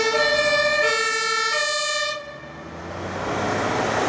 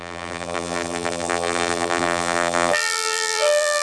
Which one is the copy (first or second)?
second